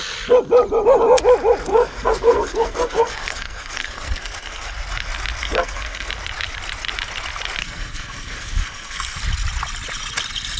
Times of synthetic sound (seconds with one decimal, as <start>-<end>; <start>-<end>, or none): 1.7-4.7; 5.4-6.1; 7.6-9.2